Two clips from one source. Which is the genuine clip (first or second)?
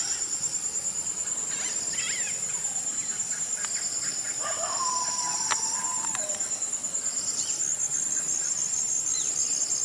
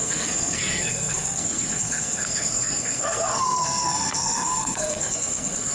first